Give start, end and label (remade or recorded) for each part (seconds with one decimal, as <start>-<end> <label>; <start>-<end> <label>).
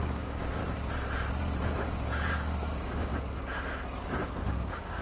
0.0-0.6 remade; 0.6-1.8 recorded; 1.8-3.1 remade; 3.1-4.5 recorded; 4.5-5.0 remade